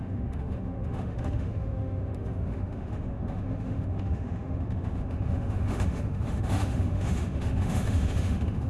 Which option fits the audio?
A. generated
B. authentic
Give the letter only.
A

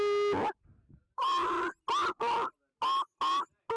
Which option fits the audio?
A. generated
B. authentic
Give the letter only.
B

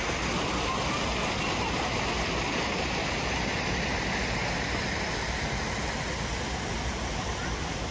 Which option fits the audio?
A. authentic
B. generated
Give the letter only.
A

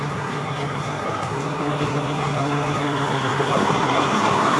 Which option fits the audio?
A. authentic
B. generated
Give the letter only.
B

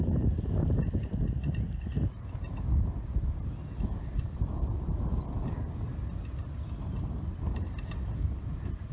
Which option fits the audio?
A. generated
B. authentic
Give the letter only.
B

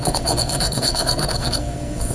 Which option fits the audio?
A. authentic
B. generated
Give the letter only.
B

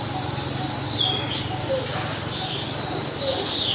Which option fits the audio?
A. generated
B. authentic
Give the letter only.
B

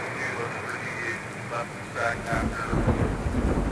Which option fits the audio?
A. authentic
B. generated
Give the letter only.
A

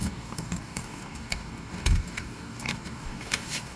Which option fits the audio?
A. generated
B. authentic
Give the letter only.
A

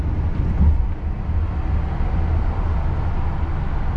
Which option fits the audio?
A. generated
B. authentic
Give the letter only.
B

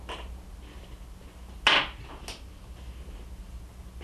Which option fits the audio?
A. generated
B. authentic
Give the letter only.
B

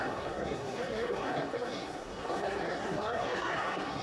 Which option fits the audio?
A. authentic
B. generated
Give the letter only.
B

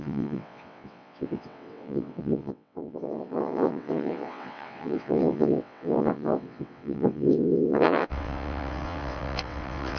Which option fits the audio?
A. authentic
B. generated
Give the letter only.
B